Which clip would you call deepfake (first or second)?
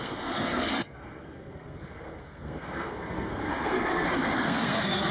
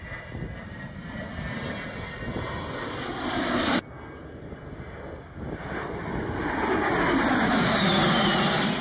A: first